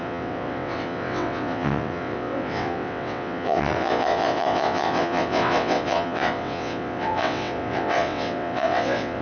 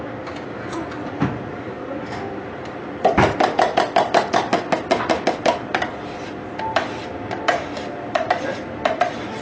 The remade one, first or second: first